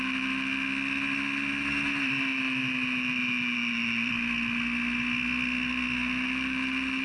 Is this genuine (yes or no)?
yes